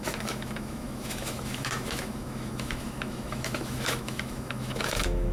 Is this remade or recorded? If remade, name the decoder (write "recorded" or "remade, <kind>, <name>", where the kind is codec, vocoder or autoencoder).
remade, autoencoder, DAC-VAE